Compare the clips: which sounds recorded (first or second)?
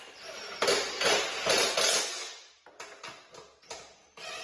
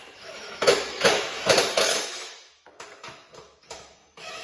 first